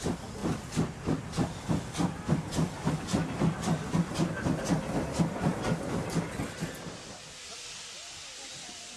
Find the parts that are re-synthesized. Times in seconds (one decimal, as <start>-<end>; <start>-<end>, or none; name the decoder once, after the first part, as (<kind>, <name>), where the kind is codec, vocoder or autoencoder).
none